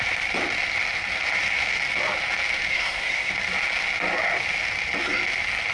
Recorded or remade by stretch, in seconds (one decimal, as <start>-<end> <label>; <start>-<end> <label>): 0.0-2.7 recorded; 2.7-3.3 remade; 3.3-5.7 recorded